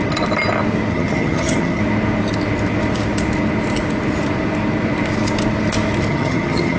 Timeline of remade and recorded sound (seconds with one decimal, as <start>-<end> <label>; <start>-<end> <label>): 0.0-0.9 recorded; 0.9-1.8 remade; 1.8-6.1 recorded; 6.1-6.8 remade